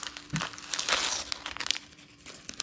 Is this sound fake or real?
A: real